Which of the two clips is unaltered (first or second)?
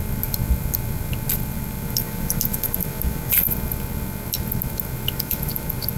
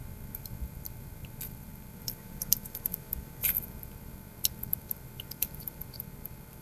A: first